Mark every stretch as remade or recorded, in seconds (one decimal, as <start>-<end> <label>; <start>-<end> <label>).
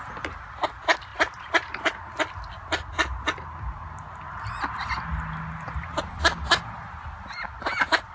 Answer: 0.0-1.1 recorded; 1.1-1.8 remade; 1.8-8.1 recorded